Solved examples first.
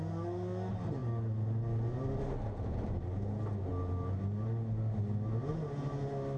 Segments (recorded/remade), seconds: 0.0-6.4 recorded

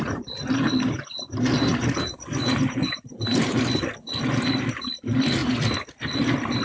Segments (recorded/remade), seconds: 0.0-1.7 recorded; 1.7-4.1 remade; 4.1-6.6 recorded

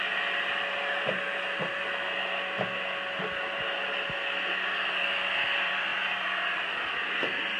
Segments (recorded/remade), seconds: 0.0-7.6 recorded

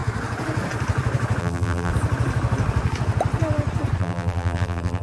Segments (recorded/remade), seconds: 0.0-1.4 recorded; 1.4-1.9 remade; 1.9-4.0 recorded; 4.0-5.0 remade

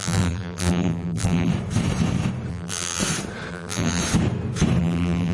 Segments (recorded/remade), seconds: 0.0-1.5 remade; 1.5-2.5 recorded; 2.5-3.0 remade; 3.0-3.5 recorded; 3.5-4.0 remade; 4.0-4.8 recorded; 4.8-5.3 remade

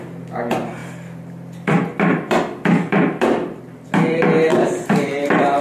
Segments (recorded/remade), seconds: 0.0-0.8 recorded; 0.8-3.6 remade; 3.6-4.5 recorded; 4.5-5.6 remade

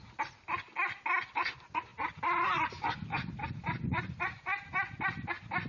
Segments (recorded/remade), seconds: 0.0-1.9 recorded; 1.9-5.3 remade; 5.3-5.7 recorded